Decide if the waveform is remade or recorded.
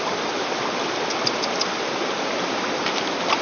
recorded